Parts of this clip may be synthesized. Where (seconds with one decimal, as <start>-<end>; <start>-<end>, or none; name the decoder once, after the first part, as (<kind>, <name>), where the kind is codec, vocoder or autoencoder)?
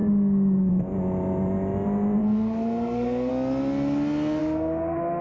2.2-3.3 (codec, SNAC); 4.4-5.2